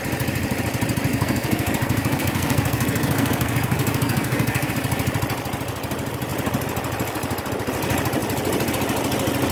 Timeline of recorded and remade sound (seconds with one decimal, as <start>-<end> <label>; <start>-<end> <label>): 0.0-1.1 recorded; 1.1-4.7 remade; 4.7-9.5 recorded